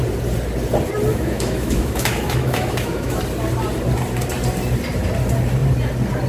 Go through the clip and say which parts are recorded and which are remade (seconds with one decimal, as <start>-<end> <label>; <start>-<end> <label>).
0.0-1.1 recorded; 1.1-3.2 remade; 3.2-6.3 recorded